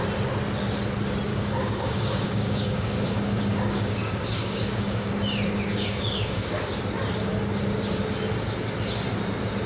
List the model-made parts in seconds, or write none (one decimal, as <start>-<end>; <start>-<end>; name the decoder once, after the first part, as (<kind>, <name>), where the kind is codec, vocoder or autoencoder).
1.3-5.1 (codec, DAC); 5.7-6.7

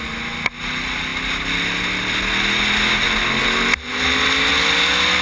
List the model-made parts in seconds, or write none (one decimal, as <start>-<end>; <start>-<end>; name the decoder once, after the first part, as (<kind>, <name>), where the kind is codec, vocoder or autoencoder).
none